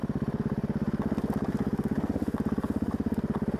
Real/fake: real